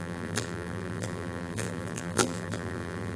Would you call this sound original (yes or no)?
no